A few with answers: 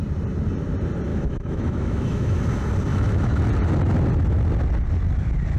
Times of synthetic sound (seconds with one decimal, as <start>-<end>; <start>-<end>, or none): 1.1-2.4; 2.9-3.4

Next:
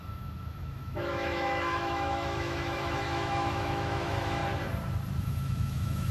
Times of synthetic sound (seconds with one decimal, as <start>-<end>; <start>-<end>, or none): 0.0-4.4; 5.2-6.1

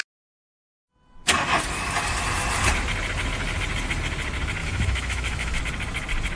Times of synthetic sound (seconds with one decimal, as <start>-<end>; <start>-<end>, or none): 4.6-5.6

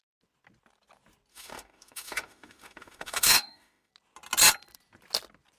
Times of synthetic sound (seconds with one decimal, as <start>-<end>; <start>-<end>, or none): 1.3-3.9